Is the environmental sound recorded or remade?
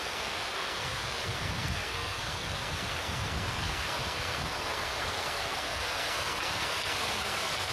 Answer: remade